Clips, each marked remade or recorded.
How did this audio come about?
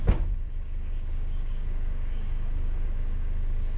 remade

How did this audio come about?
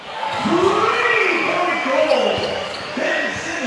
remade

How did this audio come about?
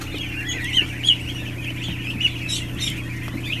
recorded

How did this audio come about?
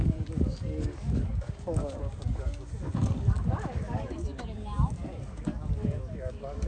remade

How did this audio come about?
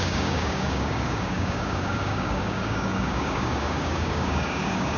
remade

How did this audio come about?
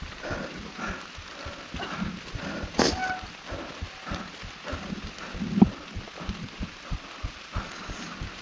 recorded